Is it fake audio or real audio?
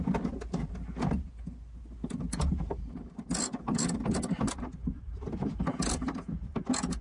real